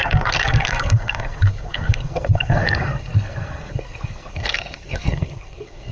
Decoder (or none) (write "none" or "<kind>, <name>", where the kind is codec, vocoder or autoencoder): codec, SNAC